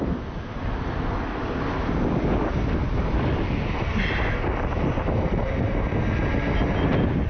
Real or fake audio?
real